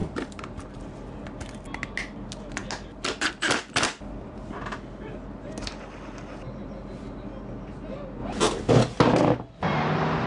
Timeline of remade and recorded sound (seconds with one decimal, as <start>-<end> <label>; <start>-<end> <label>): 0.0-0.9 remade; 0.9-10.3 recorded